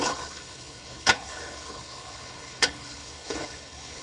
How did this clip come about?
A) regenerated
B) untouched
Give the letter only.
A